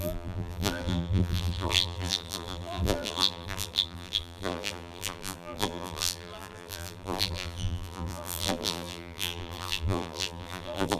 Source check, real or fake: fake